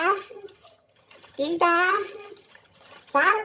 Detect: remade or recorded remade